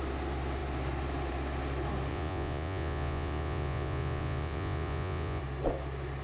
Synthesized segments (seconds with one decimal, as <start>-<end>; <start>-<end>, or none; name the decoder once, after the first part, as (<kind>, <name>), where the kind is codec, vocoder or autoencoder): 2.1-5.4 (vocoder, Vocos)